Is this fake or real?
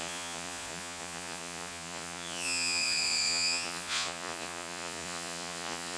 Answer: fake